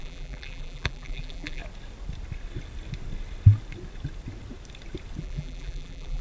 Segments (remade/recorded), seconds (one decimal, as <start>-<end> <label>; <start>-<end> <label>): 0.0-1.6 remade; 1.6-5.2 recorded; 5.2-6.2 remade